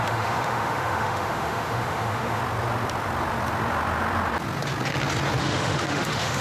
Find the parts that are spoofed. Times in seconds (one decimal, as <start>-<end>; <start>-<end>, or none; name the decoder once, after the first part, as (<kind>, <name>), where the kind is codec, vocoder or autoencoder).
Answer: 0.0-2.4 (autoencoder, DAC-VAE); 5.4-6.4